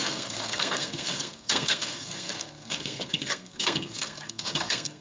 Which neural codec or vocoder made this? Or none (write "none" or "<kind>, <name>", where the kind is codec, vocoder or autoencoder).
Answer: codec, SNAC